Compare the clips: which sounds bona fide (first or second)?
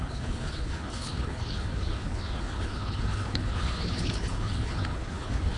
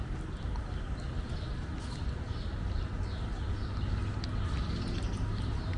second